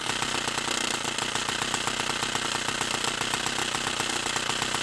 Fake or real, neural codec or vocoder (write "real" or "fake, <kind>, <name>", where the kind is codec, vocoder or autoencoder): real